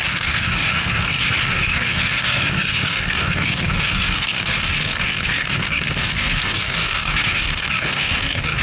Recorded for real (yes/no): no